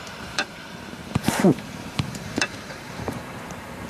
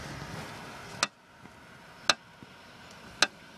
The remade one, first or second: first